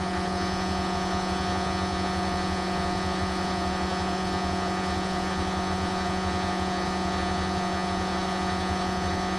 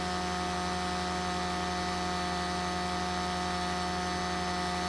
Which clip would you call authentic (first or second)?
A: second